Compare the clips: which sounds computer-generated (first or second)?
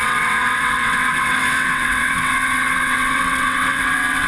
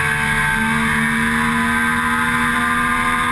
first